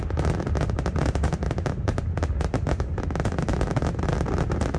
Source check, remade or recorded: recorded